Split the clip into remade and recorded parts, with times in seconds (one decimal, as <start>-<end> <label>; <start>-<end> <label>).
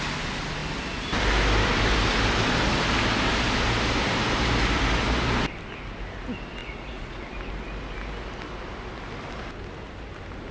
0.0-6.6 recorded; 6.6-7.2 remade; 7.2-10.5 recorded